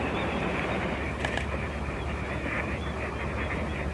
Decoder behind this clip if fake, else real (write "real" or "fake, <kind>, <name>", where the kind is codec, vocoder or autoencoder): fake, vocoder, BigVGAN v2